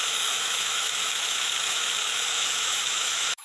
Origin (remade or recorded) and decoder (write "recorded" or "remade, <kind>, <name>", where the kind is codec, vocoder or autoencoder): remade, autoencoder, DAC-VAE